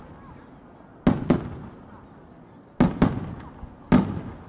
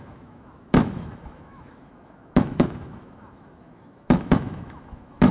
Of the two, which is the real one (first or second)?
first